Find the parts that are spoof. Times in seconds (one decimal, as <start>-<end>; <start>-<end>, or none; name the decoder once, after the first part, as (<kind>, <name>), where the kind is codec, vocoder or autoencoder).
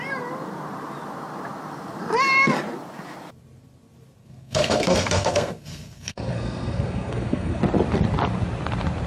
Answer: 4.2-7.6 (codec, SNAC)